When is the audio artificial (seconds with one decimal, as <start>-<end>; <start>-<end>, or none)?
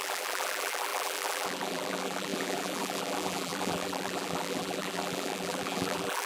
0.0-6.3